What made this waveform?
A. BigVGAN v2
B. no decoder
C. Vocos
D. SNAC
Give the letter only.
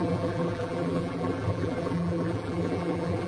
A